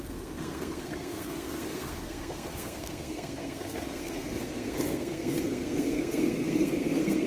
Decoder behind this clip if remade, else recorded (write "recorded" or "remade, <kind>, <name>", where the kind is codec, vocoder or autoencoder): remade, codec, SNAC